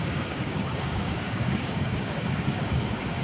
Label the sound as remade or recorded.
remade